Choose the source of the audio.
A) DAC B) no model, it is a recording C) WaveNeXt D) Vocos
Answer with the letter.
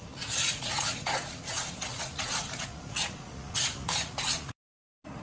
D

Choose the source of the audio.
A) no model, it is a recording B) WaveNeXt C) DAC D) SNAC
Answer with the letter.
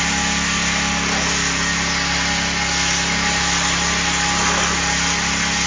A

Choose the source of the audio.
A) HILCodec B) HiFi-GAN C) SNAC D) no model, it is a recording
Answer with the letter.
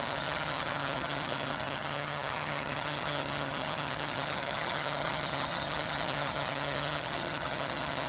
B